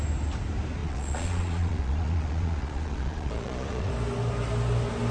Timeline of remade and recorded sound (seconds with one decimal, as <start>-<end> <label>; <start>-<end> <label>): 0.0-0.8 recorded; 0.8-3.9 remade; 3.9-5.1 recorded